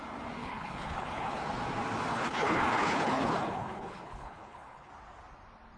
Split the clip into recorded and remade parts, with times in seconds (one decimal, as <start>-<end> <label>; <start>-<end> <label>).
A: 0.0-0.4 recorded; 0.4-1.4 remade; 1.4-2.1 recorded; 2.1-4.9 remade; 4.9-5.8 recorded